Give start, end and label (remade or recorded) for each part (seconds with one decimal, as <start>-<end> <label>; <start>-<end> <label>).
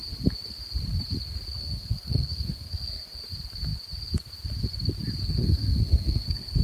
0.0-1.5 recorded; 1.5-3.2 remade; 3.2-5.2 recorded; 5.2-6.6 remade